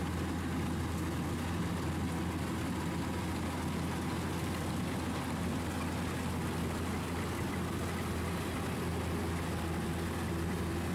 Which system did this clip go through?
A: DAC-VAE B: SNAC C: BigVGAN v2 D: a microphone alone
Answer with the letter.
D